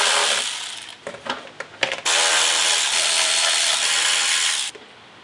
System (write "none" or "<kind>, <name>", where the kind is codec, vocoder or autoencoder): none